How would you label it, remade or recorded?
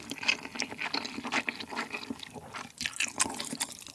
recorded